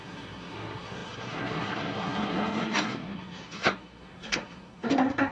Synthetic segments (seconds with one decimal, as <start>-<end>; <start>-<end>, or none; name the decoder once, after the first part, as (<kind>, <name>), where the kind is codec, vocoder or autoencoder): 0.0-5.3 (codec, SNAC)